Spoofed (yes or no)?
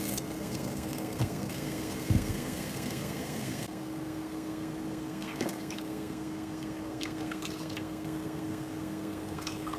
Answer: yes